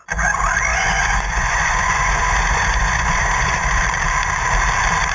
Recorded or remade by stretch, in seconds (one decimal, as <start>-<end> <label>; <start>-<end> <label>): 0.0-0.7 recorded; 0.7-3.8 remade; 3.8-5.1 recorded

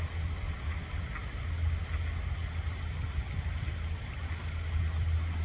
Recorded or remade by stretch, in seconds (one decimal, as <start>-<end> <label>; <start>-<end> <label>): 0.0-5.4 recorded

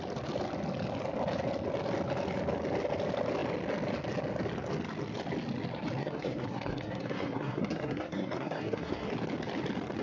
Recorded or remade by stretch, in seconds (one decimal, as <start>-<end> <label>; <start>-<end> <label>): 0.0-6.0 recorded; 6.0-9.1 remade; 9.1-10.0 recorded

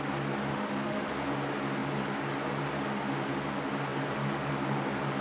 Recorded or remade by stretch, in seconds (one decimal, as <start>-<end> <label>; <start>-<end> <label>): 0.0-0.5 recorded; 0.5-1.1 remade; 1.1-5.2 recorded

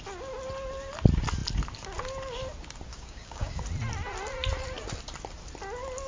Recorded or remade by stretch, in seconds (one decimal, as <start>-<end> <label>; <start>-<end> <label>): 0.0-2.9 recorded; 2.9-3.6 remade; 3.6-6.1 recorded

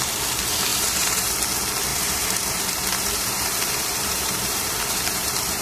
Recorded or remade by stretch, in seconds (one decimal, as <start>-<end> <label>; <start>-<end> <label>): 0.0-0.7 recorded; 0.7-1.3 remade; 1.3-1.9 recorded; 1.9-5.6 remade

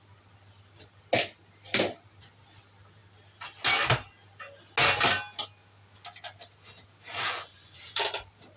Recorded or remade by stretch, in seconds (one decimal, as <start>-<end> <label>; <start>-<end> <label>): 0.0-7.3 recorded; 7.3-7.9 remade; 7.9-8.6 recorded